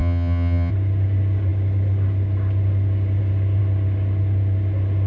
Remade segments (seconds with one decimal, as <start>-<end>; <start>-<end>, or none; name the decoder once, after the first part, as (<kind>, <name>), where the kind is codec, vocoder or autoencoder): 0.0-0.7 (vocoder, HiFi-GAN)